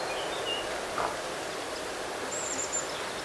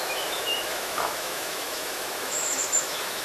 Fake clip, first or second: second